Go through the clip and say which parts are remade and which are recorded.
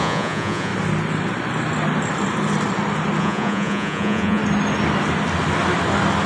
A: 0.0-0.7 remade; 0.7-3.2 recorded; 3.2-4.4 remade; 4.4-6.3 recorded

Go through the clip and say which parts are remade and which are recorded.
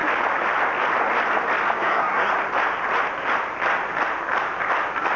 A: 0.0-1.8 recorded; 1.8-2.3 remade; 2.3-5.2 recorded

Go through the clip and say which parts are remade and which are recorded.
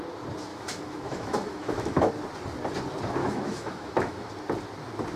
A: 0.0-0.5 recorded; 0.5-2.1 remade; 2.1-3.2 recorded; 3.2-4.3 remade; 4.3-5.2 recorded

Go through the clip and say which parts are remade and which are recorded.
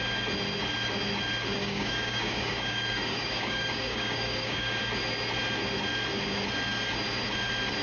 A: 0.0-1.6 recorded; 1.6-4.8 remade; 4.8-7.8 recorded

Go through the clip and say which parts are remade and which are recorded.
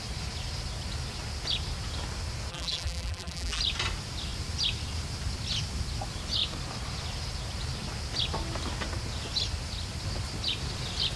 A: 0.0-2.5 recorded; 2.5-3.6 remade; 3.6-11.2 recorded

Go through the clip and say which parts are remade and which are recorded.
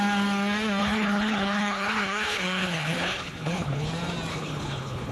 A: 0.0-0.8 recorded; 0.8-3.9 remade; 3.9-4.3 recorded; 4.3-5.1 remade